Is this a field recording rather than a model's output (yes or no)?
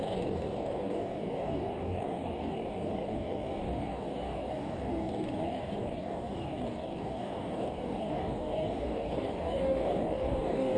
no